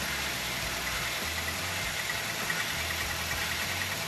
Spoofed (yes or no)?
no